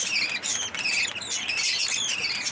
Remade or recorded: recorded